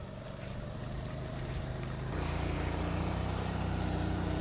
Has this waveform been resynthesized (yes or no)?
yes